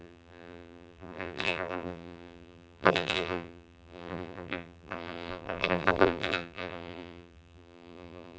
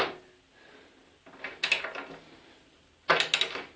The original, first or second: second